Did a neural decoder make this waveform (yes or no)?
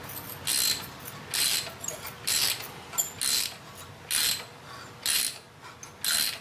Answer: no